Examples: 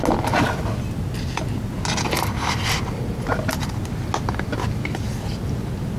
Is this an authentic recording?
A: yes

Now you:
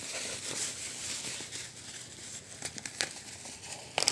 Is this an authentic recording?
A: no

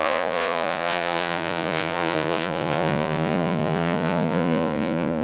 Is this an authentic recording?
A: no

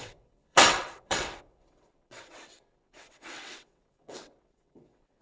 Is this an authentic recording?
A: no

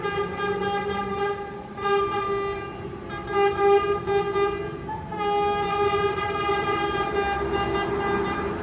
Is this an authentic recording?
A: yes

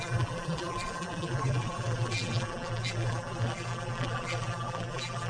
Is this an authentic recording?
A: no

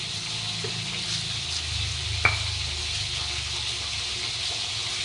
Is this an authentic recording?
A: yes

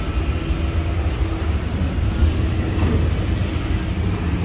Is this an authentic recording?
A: yes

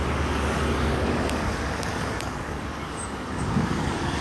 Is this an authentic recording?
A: no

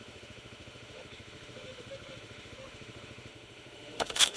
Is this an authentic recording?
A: no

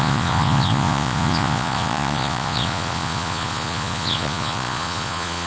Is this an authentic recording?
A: no